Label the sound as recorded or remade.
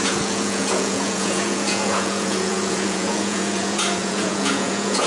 remade